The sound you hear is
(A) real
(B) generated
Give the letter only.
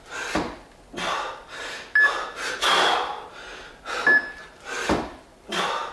A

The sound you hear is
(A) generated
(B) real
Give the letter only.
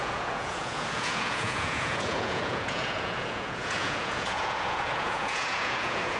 A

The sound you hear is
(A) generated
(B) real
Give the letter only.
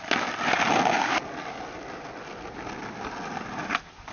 B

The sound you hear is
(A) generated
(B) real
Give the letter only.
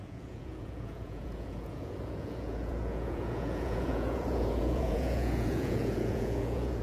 A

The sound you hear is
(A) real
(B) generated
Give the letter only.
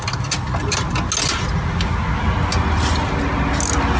A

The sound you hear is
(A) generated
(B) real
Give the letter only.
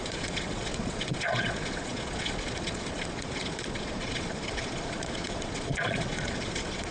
A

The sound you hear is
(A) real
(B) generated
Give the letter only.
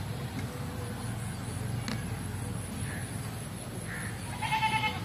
A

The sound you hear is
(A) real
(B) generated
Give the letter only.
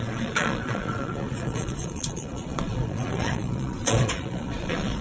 B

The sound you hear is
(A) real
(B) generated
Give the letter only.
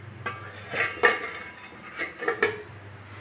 A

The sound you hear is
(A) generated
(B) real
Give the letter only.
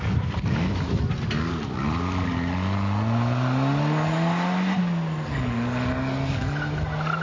B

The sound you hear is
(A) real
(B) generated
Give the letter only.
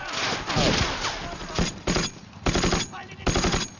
A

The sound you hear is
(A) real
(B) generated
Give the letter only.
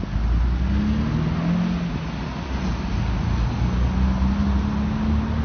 A